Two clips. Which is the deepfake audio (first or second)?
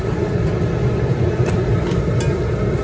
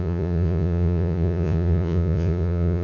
second